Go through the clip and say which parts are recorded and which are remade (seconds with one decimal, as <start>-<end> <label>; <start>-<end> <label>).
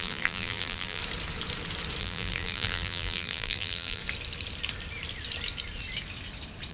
0.0-1.0 remade; 1.0-2.0 recorded; 2.0-4.0 remade; 4.0-6.7 recorded